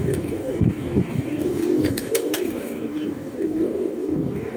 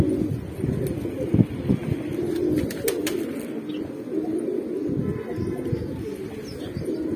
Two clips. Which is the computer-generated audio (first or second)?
first